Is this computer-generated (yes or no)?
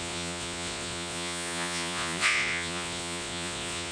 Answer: yes